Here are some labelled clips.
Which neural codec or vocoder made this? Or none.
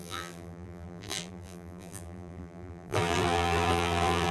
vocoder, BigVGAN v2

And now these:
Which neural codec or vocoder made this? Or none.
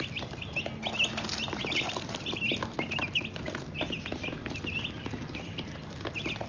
none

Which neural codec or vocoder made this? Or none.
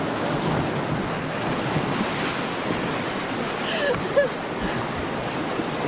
none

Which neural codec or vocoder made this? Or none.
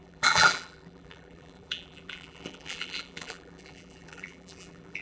vocoder, BigVGAN v2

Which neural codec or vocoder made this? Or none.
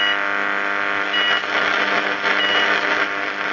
none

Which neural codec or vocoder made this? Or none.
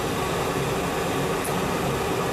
none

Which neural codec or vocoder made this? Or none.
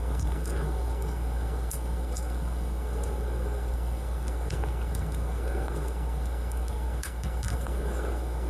codec, SNAC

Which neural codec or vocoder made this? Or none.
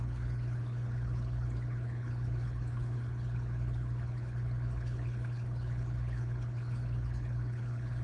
codec, HILCodec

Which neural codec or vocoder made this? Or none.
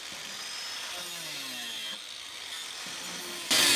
none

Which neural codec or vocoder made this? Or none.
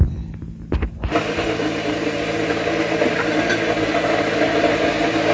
none